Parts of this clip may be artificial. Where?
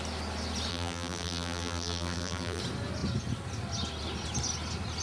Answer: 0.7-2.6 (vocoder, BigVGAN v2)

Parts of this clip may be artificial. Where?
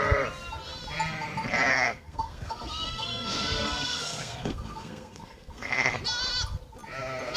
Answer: 1.7-6.0 (codec, SNAC)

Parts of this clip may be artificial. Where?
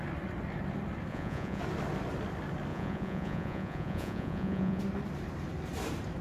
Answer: 1.1-1.6 (vocoder, Vocos); 2.7-4.8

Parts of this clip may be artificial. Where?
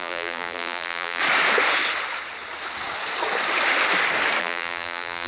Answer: 0.0-1.2 (vocoder, BigVGAN v2); 4.4-5.3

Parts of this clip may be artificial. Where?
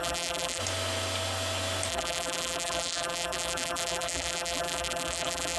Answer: 0.0-0.6 (vocoder, BigVGAN v2); 1.9-5.6